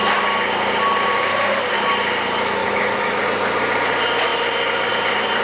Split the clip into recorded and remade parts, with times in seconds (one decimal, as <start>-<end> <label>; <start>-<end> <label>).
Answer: 0.0-2.6 recorded; 2.6-3.2 remade; 3.2-5.4 recorded